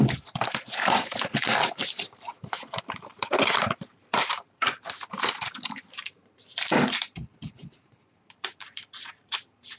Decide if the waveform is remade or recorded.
remade